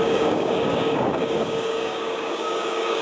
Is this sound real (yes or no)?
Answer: no